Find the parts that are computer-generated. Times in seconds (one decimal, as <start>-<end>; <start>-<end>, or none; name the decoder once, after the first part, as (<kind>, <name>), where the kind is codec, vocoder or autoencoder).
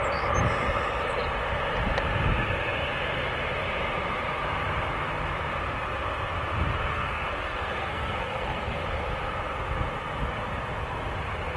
6.9-8.8 (codec, SNAC)